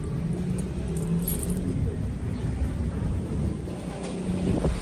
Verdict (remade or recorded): recorded